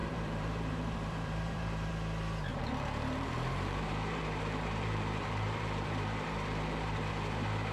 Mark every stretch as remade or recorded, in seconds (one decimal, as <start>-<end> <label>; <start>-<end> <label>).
0.0-1.9 remade; 1.9-2.5 recorded; 2.5-7.1 remade; 7.1-7.7 recorded